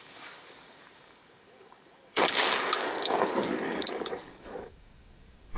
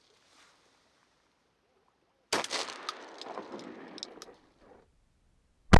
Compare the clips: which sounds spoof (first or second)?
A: first